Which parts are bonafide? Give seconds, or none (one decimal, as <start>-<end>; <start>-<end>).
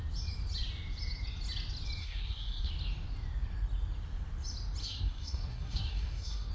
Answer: 0.0-2.0; 2.7-4.8